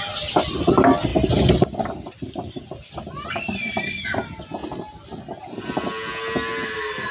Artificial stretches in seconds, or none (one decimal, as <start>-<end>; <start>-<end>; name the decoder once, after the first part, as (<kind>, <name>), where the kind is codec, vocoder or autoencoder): none